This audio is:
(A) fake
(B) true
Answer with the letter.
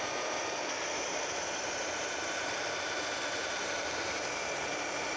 A